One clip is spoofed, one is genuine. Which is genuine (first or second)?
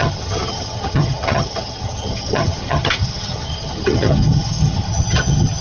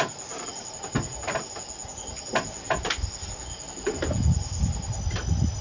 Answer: second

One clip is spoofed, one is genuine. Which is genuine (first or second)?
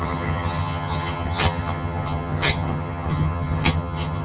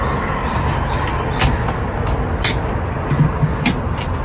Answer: second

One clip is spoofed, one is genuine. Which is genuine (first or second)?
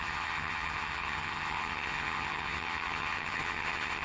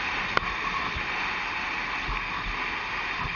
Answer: second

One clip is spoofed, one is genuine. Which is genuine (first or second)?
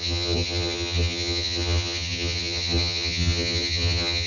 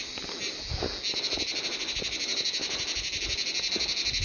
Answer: second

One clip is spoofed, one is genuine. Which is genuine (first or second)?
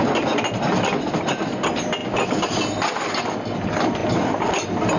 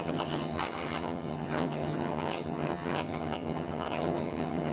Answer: first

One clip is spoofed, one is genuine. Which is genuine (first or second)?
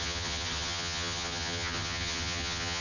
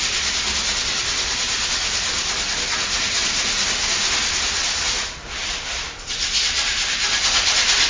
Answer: second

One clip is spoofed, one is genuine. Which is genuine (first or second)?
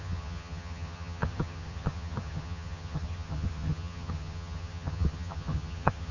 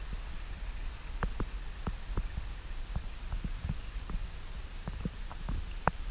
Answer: second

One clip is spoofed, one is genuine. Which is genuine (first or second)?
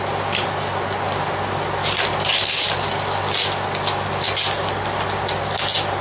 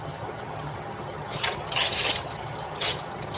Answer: first